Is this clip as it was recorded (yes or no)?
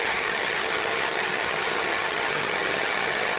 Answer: no